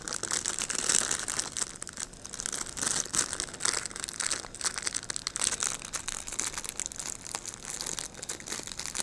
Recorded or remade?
recorded